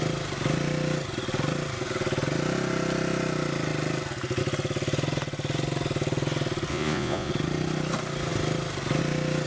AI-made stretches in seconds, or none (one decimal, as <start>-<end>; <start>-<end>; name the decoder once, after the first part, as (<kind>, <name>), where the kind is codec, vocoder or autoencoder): 6.7-7.3 (vocoder, Vocos)